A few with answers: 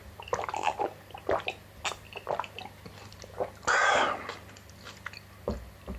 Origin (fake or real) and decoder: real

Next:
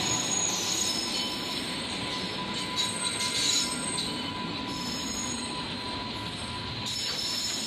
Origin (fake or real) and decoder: real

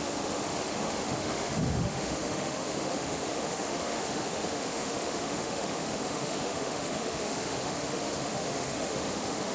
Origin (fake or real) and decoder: fake, autoencoder, DAC-VAE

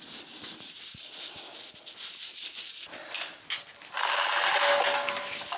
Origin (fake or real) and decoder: real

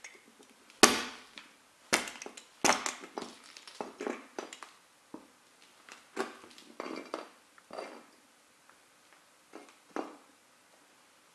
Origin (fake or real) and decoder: real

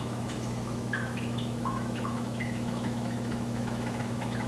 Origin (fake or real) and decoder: fake, autoencoder, DAC-VAE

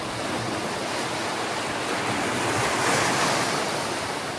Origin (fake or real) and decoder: real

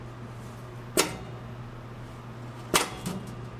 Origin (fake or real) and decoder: real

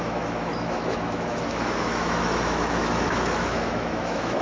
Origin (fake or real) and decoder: fake, autoencoder, DAC-VAE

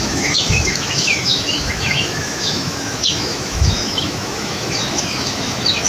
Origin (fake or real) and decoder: fake, autoencoder, DAC-VAE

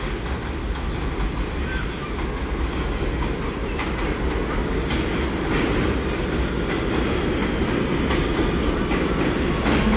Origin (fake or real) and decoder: real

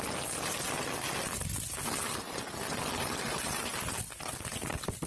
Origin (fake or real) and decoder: real